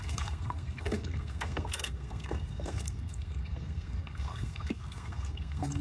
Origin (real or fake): fake